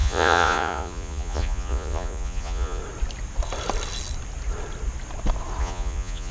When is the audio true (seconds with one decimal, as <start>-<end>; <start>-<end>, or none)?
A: 2.8-5.6